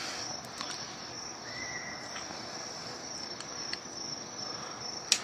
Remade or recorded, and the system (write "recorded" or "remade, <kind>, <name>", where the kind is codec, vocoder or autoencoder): recorded